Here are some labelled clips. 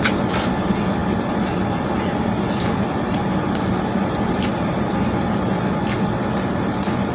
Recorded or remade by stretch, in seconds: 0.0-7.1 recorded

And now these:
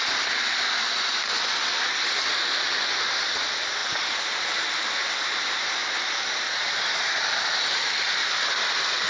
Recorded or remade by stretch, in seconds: 0.0-9.1 recorded